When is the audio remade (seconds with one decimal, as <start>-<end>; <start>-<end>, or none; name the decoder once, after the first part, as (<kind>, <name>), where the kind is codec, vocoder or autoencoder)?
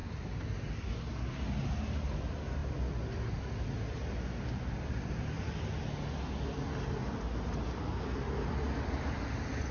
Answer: none